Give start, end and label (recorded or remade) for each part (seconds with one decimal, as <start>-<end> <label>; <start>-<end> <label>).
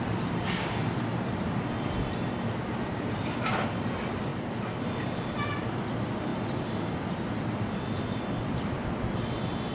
0.0-4.3 remade; 4.3-4.8 recorded; 4.8-9.7 remade